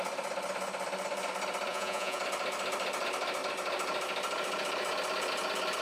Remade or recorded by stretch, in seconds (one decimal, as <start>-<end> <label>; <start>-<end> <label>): 0.0-1.7 recorded; 1.7-2.2 remade; 2.2-5.8 recorded